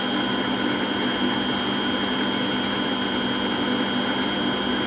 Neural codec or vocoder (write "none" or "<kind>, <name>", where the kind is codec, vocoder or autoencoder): none